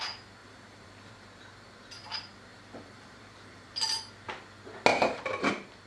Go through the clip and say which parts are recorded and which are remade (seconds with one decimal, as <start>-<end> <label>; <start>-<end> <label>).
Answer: 0.0-0.4 recorded; 0.4-1.1 remade; 1.1-2.5 recorded; 2.5-4.0 remade; 4.0-4.9 recorded; 4.9-5.9 remade